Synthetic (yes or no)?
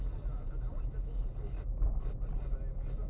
no